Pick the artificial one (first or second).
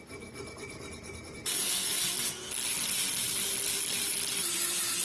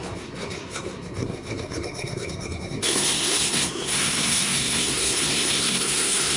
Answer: second